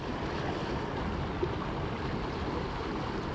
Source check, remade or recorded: recorded